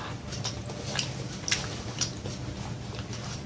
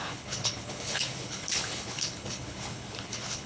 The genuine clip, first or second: first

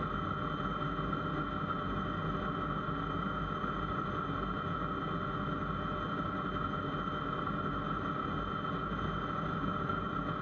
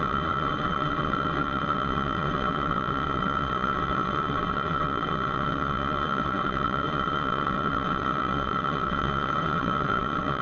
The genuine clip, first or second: first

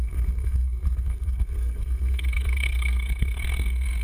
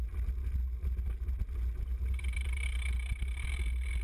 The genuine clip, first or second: second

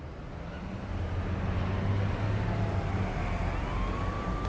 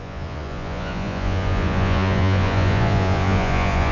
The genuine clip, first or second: first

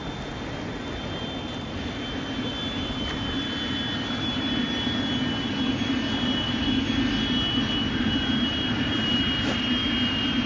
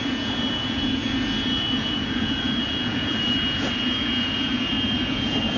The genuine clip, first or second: first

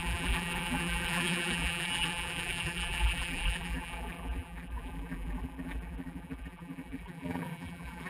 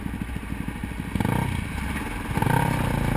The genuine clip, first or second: second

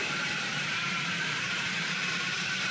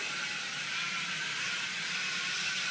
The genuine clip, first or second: second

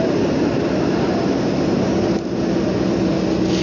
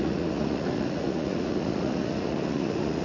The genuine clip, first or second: first